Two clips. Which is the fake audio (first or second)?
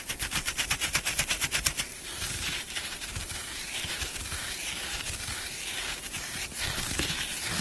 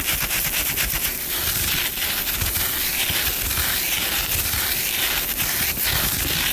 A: first